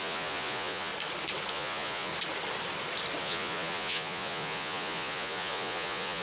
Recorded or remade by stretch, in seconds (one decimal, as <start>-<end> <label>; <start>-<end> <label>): 0.0-0.9 remade; 0.9-1.5 recorded; 1.5-2.1 remade; 2.1-3.2 recorded; 3.2-6.2 remade